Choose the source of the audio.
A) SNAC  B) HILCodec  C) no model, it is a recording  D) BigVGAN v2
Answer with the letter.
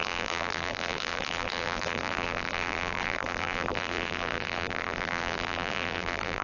D